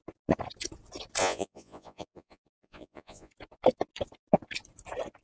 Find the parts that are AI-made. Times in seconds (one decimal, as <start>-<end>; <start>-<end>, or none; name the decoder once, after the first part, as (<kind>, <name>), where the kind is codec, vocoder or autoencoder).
1.2-3.3 (vocoder, Vocos)